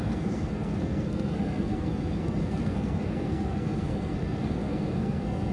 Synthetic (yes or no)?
yes